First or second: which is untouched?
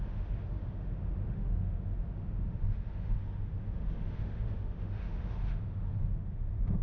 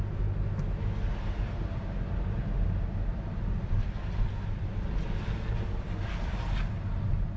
second